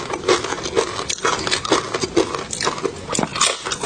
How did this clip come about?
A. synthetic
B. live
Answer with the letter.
B